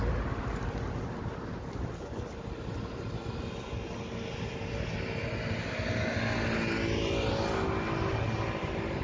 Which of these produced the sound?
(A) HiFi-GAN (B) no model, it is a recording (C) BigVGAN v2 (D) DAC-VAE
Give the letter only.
B